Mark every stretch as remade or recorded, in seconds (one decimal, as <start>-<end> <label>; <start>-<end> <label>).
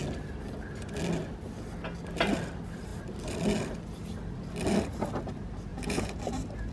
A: 0.0-5.7 recorded; 5.7-6.2 remade; 6.2-6.7 recorded